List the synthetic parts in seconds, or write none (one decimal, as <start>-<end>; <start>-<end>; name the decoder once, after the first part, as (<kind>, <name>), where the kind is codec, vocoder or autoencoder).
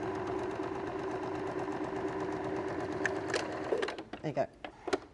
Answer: none